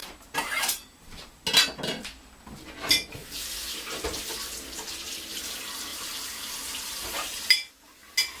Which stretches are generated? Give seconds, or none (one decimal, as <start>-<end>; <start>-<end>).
0.0-1.4; 3.2-4.2; 5.9-7.7